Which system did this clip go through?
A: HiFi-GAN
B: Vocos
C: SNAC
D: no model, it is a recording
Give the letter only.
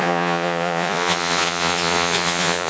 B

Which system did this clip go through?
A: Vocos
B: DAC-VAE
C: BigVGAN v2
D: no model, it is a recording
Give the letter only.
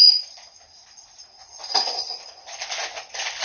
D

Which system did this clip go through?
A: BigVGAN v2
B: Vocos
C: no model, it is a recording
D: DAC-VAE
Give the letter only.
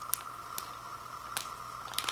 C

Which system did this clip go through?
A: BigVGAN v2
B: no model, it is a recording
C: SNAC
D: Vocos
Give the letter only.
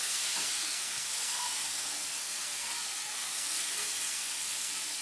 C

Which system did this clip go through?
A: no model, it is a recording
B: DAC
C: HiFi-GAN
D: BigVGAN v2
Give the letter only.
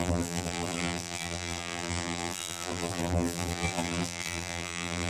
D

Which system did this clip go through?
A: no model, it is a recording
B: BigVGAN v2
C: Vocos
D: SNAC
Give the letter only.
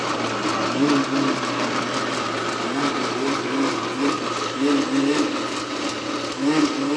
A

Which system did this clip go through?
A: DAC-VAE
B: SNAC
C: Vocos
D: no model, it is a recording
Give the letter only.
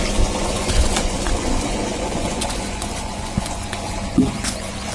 C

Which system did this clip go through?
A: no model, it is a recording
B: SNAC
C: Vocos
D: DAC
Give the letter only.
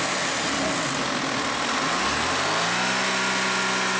A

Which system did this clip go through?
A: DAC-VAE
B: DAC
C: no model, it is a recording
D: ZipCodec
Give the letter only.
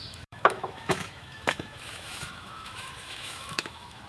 A